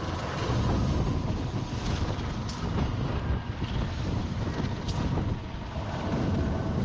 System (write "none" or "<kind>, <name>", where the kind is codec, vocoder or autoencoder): none